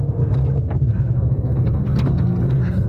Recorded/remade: remade